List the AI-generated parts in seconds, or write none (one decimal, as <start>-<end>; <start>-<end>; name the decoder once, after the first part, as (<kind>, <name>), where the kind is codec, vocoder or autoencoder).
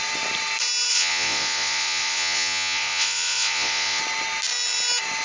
0.9-4.0 (vocoder, Vocos)